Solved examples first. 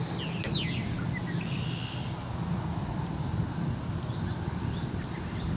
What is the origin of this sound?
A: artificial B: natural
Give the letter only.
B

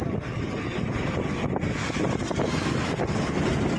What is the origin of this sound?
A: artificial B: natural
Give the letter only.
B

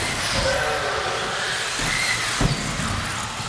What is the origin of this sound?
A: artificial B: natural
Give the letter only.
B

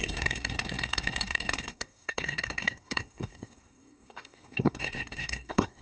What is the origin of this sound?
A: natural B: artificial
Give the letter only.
B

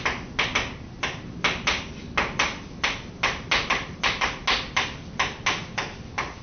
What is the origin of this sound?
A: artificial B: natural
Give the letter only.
B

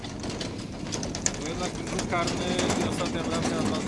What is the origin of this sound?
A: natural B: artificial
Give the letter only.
A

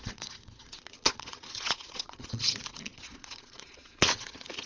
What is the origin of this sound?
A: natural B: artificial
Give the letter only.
B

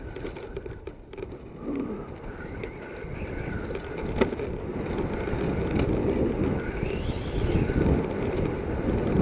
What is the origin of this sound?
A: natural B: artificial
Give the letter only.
A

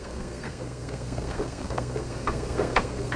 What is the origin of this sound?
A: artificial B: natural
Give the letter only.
A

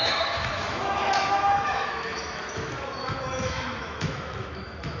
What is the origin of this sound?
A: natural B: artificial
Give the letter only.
B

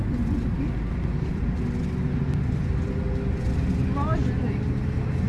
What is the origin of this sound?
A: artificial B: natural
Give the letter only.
B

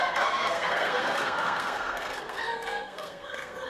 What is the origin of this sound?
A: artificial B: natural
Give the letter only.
A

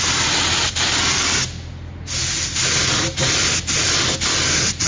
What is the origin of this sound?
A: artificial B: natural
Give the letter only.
B